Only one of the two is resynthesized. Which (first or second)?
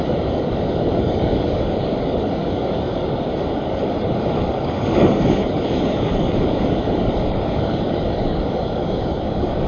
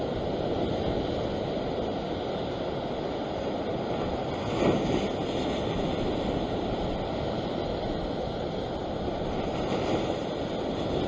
first